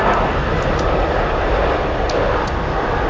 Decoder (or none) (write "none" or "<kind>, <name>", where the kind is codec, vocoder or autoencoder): none